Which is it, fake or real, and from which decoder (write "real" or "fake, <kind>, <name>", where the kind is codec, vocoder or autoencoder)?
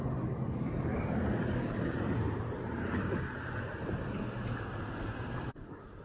fake, vocoder, BigVGAN v2